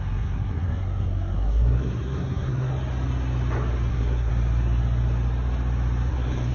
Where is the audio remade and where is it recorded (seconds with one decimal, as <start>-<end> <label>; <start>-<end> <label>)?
0.0-2.7 remade; 2.7-3.9 recorded; 3.9-4.3 remade; 4.3-6.1 recorded; 6.1-6.5 remade